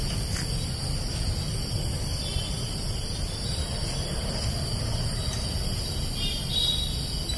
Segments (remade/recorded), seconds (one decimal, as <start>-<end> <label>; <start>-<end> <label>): 0.0-2.1 recorded; 2.1-4.3 remade; 4.3-7.4 recorded